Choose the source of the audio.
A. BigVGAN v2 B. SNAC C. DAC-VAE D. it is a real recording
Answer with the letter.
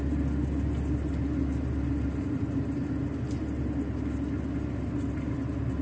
D